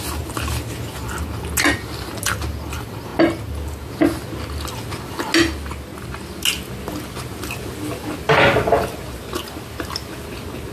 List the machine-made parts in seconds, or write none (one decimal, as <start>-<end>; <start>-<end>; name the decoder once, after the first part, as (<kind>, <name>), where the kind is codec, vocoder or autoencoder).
none